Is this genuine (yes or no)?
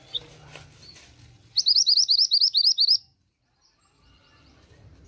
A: yes